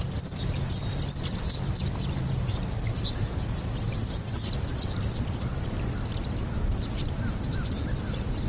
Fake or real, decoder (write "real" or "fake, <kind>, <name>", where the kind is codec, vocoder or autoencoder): real